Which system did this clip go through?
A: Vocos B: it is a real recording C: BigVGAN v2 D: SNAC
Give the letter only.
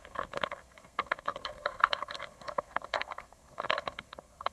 D